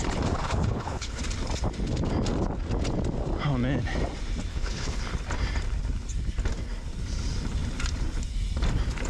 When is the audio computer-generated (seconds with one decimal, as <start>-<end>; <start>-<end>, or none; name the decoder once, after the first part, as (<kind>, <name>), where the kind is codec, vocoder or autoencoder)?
0.4-1.2 (codec, HILCodec); 4.5-5.0